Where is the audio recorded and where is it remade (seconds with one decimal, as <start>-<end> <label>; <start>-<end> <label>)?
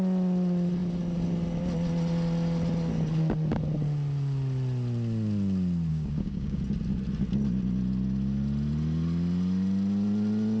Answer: 0.0-5.9 recorded; 5.9-6.6 remade; 6.6-10.6 recorded